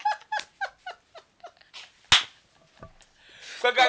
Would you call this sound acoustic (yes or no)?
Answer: yes